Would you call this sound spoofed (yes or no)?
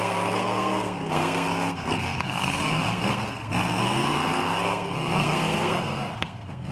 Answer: yes